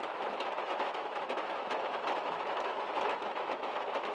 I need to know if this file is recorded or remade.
remade